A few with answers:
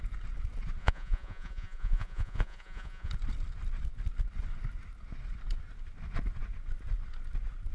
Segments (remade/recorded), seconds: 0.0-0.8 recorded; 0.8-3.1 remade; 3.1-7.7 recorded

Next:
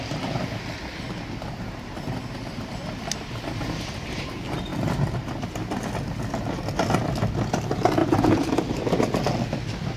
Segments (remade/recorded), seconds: 0.0-8.0 recorded; 8.0-8.6 remade; 8.6-10.0 recorded

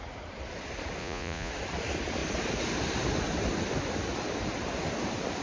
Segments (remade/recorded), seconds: 0.0-1.0 recorded; 1.0-1.5 remade; 1.5-5.4 recorded

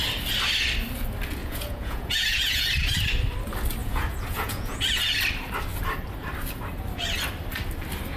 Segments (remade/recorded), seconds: 0.0-1.4 recorded; 1.4-2.7 remade; 2.7-3.8 recorded; 3.8-5.0 remade; 5.0-8.2 recorded

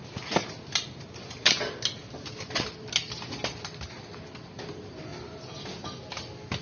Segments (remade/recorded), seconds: 0.0-6.6 recorded